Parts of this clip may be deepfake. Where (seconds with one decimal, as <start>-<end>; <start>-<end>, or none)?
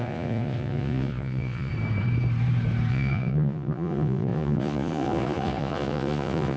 0.0-1.7; 2.9-6.6